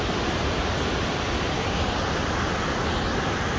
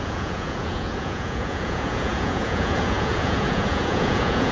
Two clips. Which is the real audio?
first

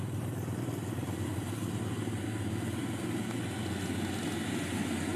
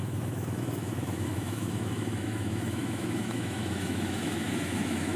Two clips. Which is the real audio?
first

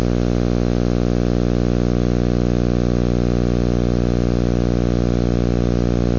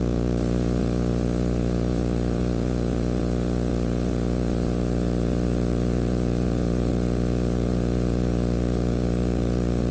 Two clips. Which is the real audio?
first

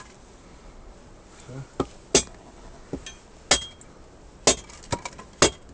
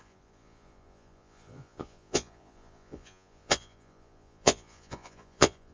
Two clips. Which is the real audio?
first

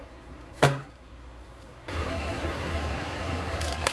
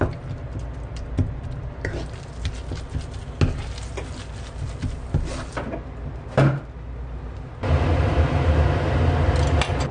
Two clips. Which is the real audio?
second